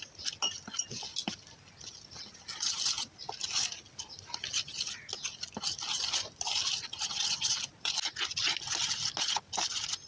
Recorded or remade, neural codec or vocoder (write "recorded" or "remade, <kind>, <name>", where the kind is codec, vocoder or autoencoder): recorded